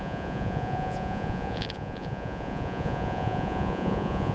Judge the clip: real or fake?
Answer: fake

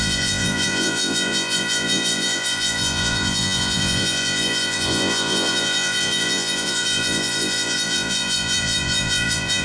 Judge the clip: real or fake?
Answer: fake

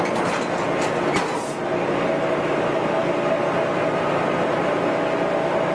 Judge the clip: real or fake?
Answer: real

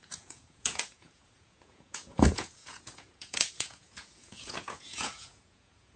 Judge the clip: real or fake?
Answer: fake